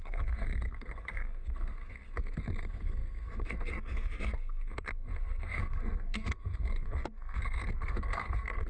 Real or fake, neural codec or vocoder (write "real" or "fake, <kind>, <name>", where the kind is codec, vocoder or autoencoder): fake, codec, SNAC